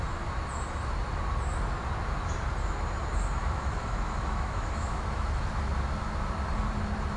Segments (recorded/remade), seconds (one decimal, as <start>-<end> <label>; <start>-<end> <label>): 0.0-3.4 recorded; 3.4-5.5 remade; 5.5-7.2 recorded